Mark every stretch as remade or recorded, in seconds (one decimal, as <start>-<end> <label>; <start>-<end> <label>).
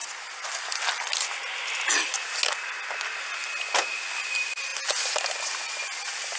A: 0.0-6.4 recorded